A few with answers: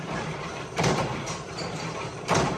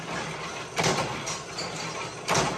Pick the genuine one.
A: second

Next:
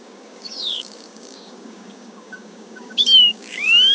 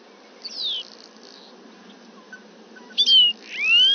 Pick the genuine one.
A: second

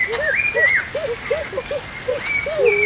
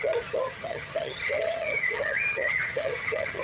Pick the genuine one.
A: first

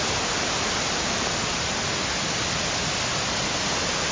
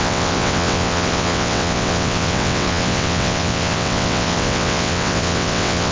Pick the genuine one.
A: first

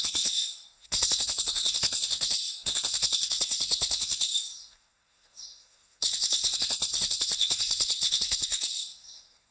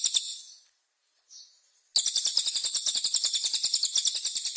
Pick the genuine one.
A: second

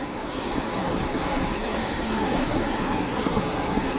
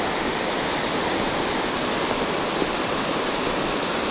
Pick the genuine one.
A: second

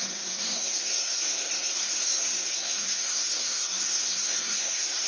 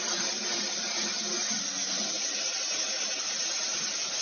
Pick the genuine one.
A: second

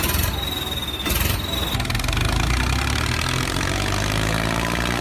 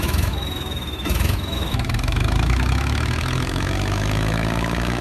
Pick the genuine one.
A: first